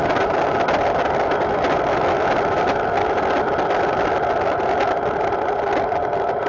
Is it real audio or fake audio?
real